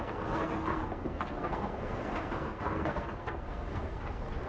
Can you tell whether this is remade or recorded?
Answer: remade